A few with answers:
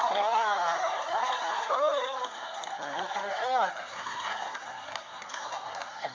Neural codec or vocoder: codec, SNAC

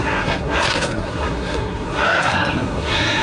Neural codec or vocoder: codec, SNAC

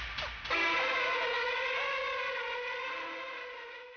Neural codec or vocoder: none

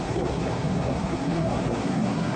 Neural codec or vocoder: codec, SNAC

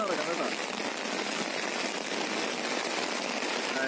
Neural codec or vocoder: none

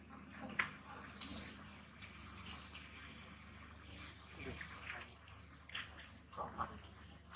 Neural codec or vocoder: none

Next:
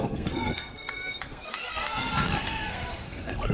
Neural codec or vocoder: codec, SNAC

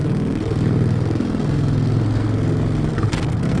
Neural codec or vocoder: codec, SNAC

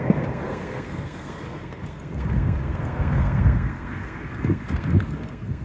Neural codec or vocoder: codec, SNAC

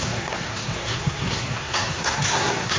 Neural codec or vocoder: codec, SNAC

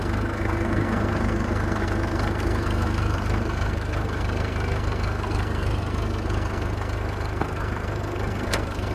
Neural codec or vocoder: codec, SNAC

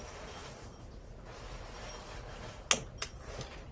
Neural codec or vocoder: none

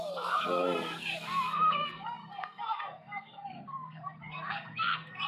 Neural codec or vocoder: codec, SNAC